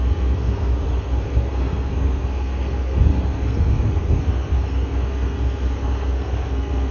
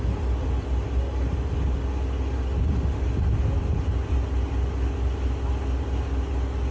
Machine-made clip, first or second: first